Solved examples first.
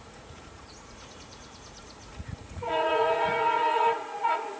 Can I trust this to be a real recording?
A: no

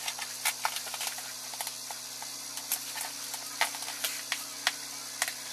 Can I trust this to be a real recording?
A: yes